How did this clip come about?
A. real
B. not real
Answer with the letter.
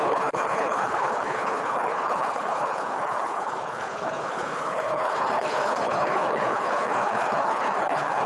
B